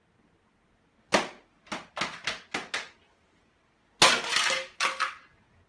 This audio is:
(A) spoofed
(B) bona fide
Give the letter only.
B